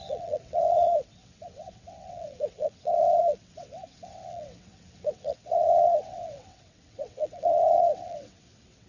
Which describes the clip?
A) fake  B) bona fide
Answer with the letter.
A